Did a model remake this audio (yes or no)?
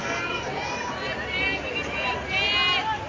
no